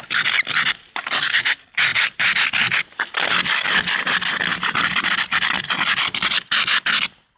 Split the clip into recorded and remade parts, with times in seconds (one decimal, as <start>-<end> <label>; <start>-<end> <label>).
0.0-1.9 recorded; 1.9-3.3 remade; 3.3-4.5 recorded; 4.5-5.6 remade; 5.6-7.4 recorded